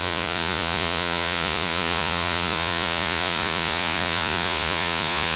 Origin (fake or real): fake